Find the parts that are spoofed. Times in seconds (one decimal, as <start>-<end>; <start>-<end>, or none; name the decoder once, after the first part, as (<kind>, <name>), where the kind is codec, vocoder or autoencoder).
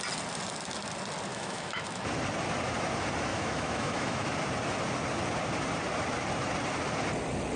1.3-2.0 (autoencoder, DAC-VAE); 3.3-4.3